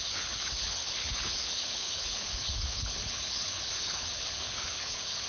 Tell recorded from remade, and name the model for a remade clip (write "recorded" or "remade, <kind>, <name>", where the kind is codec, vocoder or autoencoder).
remade, codec, HILCodec